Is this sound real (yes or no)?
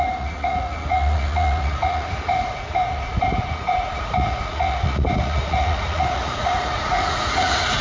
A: no